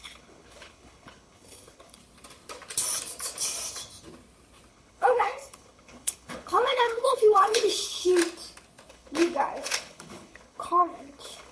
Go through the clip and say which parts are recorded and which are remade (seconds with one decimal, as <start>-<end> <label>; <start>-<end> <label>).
0.0-2.0 remade; 2.0-4.7 recorded; 4.7-8.1 remade; 8.1-8.9 recorded; 8.9-11.5 remade